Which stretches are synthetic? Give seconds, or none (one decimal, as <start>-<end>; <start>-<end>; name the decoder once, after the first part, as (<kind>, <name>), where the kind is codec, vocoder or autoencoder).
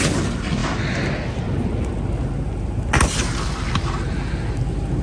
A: none